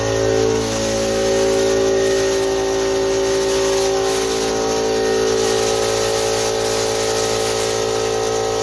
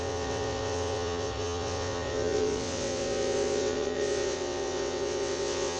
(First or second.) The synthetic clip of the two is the second